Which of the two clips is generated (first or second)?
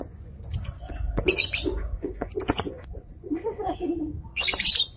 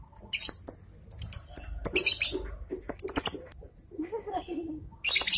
first